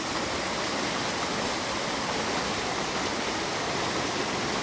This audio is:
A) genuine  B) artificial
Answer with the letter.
A